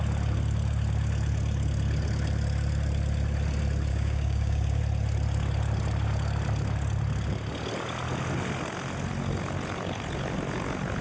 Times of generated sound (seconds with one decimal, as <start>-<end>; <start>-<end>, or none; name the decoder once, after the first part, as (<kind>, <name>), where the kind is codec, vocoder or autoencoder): 3.9-4.8 (codec, DAC)